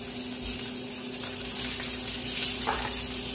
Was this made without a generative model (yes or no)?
yes